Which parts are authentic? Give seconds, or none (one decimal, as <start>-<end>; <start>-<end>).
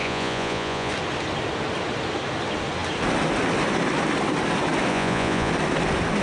0.9-4.9; 5.5-6.2